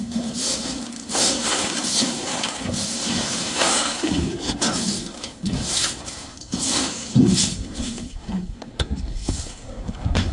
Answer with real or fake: fake